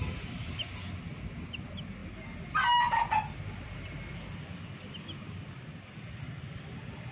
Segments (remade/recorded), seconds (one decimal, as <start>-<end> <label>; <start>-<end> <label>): 0.0-7.1 recorded